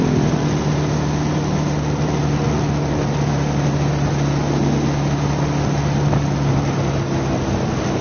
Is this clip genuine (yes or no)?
yes